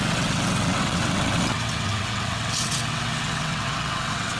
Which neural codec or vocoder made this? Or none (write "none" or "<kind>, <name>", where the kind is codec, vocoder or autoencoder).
vocoder, WaveNeXt